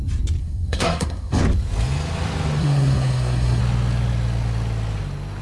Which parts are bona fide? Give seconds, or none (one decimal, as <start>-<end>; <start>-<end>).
0.0-0.4; 1.4-2.6; 3.6-5.4